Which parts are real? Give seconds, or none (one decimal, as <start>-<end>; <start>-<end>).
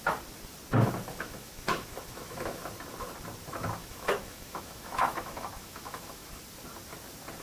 0.0-1.1; 2.6-3.8; 6.4-7.4